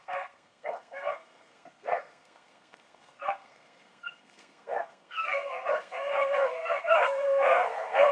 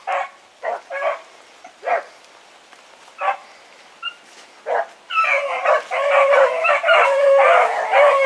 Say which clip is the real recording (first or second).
second